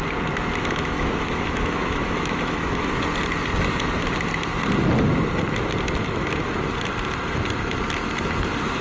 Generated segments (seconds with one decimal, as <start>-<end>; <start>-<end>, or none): 0.6-2.9